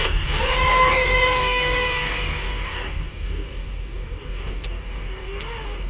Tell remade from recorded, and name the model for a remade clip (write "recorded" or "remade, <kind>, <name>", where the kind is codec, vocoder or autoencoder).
remade, codec, DAC